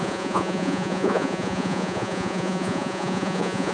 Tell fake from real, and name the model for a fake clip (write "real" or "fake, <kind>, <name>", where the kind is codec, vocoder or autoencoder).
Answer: fake, vocoder, Vocos